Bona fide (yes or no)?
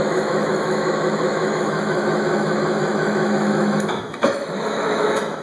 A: no